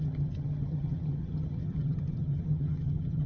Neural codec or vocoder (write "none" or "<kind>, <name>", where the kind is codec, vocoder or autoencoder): vocoder, HiFi-GAN